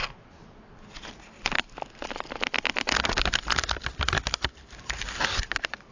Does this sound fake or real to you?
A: real